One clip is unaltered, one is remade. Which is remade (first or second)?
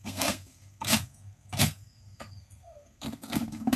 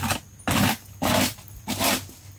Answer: first